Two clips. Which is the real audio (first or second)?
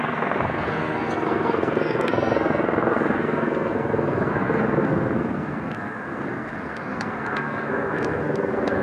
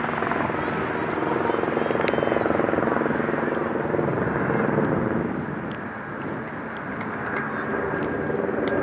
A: second